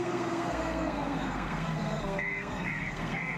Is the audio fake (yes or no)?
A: yes